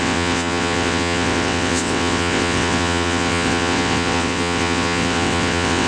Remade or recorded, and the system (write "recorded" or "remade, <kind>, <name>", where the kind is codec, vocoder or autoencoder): remade, vocoder, WaveNeXt